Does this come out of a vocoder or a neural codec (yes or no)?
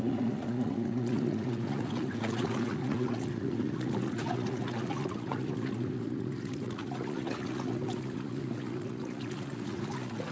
yes